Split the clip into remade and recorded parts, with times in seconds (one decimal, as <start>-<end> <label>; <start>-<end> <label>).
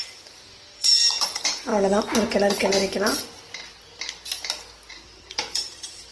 0.0-1.7 remade; 1.7-4.9 recorded; 4.9-6.1 remade